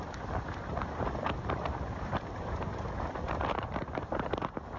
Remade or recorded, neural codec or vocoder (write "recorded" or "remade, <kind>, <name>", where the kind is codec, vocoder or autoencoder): remade, vocoder, BigVGAN v2